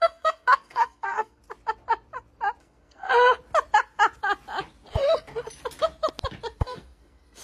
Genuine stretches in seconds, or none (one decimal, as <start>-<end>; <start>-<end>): 1.4-2.6; 3.1-6.6